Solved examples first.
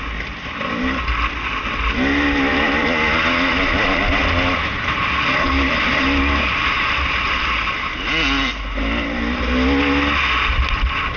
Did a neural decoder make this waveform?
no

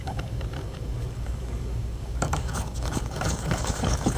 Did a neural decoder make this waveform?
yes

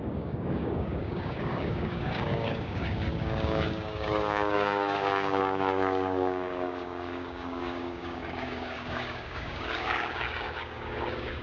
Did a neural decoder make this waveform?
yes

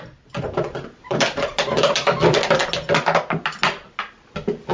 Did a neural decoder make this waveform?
no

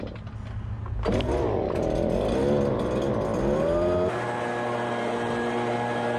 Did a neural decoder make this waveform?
no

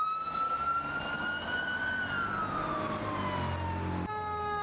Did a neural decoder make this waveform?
no